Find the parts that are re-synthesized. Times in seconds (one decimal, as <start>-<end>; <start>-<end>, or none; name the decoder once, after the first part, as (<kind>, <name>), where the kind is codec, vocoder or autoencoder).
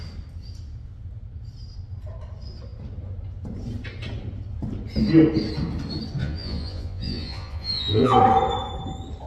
6.2-8.2 (vocoder, Vocos)